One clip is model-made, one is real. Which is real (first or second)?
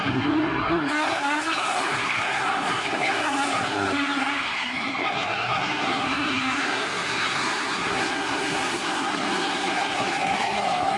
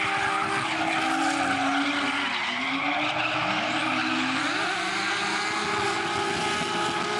second